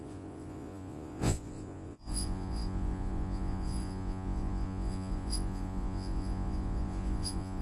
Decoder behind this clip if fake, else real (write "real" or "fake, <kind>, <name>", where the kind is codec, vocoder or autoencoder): fake, vocoder, Vocos